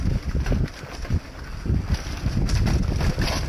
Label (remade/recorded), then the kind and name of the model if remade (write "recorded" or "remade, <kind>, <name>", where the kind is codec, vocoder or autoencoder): recorded